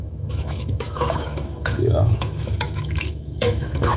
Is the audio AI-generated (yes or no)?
yes